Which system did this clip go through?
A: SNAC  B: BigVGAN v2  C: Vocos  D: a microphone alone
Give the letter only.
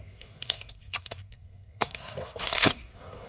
A